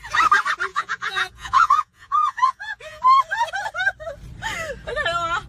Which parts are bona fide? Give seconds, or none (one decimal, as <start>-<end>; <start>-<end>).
0.0-0.7; 3.0-5.5